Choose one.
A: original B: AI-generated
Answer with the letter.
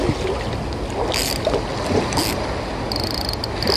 A